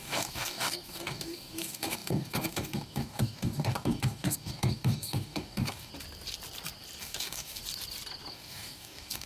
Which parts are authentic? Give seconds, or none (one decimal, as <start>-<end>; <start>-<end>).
5.9-7.0; 7.6-8.3